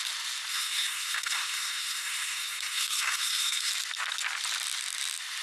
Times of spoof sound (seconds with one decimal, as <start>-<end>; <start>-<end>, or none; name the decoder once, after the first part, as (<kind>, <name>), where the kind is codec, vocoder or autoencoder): 0.5-3.7 (codec, SNAC)